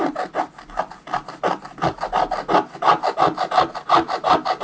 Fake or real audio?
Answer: real